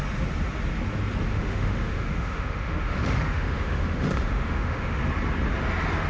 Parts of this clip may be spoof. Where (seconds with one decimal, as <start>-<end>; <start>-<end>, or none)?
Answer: 1.3-5.0

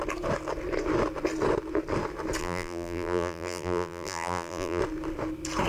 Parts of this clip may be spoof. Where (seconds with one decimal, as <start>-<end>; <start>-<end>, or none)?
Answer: 2.4-4.8

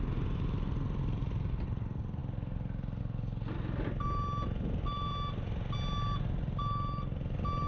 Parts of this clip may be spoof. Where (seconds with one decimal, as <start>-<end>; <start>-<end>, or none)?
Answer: none